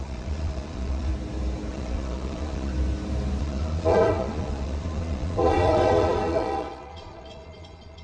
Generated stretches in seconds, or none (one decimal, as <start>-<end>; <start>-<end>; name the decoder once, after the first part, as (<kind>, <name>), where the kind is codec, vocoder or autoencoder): 0.0-1.1 (vocoder, Vocos); 1.7-2.7; 3.4-8.0